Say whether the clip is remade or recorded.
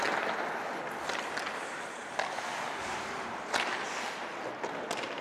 recorded